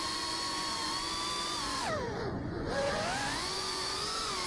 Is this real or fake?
fake